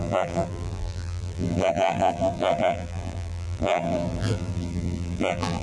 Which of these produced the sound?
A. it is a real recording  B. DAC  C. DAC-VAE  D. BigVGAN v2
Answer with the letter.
D